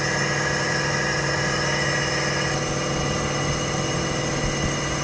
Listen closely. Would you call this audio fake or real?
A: real